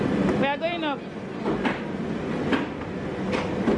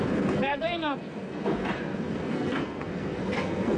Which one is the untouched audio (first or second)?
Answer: first